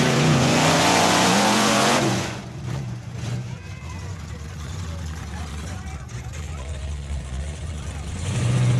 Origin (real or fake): fake